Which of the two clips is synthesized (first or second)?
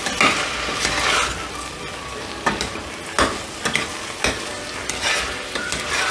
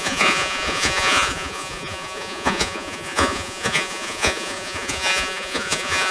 second